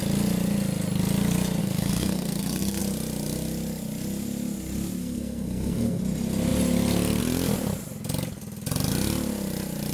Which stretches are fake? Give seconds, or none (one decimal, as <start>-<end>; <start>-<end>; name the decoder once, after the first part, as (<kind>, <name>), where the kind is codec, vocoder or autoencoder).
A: 1.6-2.8 (codec, SNAC); 5.0-6.0

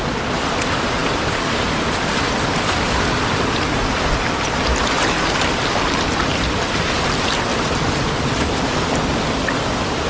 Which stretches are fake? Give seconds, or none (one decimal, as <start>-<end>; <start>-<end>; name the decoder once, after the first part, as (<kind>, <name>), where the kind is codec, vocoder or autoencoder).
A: none

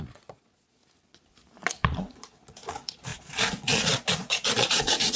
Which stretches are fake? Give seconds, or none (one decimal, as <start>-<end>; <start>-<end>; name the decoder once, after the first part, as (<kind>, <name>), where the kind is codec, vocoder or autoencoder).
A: 0.0-0.8 (vocoder, Vocos); 1.7-5.2

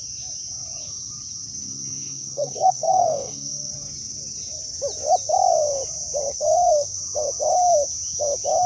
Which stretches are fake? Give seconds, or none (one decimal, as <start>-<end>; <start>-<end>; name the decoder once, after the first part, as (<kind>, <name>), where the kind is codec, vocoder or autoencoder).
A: 1.6-3.7 (codec, SNAC); 6.3-7.0

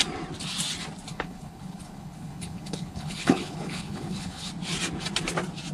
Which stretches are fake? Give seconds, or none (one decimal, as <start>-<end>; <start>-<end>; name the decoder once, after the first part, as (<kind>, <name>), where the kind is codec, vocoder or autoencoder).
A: 1.1-4.5 (codec, HILCodec)

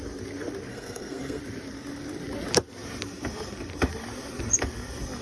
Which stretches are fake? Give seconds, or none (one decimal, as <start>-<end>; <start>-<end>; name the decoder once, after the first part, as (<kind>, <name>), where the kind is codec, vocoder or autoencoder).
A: 0.7-1.4 (codec, SNAC)

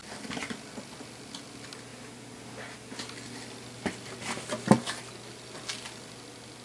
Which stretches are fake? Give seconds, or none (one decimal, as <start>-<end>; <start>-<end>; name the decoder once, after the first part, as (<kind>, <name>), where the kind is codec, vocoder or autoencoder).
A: none